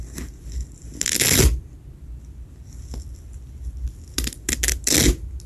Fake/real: real